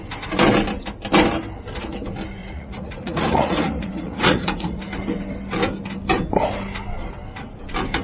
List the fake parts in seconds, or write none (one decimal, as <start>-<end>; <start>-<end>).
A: 2.4-4.8